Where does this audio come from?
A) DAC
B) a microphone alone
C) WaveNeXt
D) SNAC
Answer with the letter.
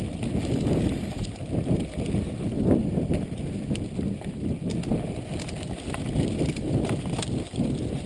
B